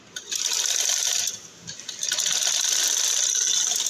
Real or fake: real